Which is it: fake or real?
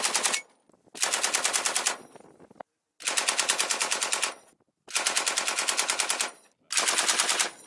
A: real